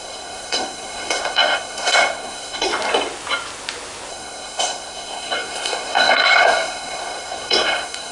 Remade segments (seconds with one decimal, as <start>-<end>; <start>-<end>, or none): 0.0-2.7; 4.1-8.1